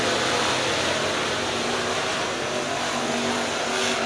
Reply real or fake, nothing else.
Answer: real